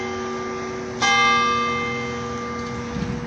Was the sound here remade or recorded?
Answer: recorded